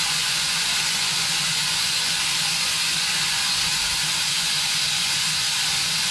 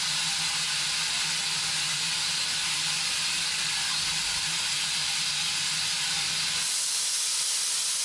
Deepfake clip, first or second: first